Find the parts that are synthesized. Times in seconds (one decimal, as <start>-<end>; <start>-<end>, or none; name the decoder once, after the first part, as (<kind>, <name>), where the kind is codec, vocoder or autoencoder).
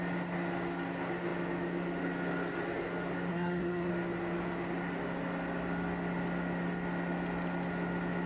3.3-3.9 (codec, SNAC)